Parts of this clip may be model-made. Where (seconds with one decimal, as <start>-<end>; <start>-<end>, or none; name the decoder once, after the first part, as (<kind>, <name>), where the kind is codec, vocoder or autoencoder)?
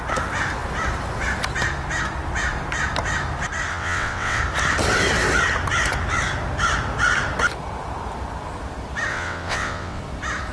3.7-4.4 (vocoder, WaveNeXt); 9.1-10.0